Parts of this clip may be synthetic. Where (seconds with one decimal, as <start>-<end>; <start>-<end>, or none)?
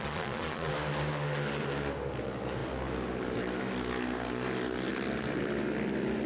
0.0-0.7